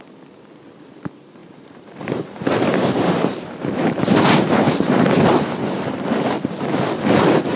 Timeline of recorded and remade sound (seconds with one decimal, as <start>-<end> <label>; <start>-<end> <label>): 0.0-1.4 recorded; 1.4-6.0 remade; 6.0-7.6 recorded